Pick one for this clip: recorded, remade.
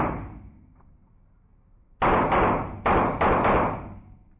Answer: recorded